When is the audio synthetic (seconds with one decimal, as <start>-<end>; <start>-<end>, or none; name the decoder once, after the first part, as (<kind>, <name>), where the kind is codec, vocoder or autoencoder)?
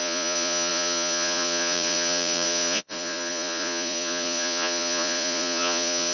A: 0.0-6.1 (vocoder, Vocos)